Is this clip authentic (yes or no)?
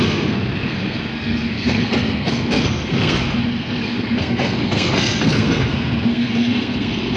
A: no